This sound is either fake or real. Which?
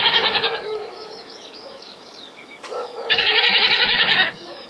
fake